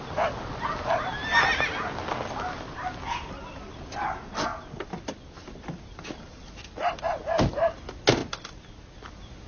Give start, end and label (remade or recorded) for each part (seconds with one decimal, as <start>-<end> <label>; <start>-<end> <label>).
0.0-9.5 recorded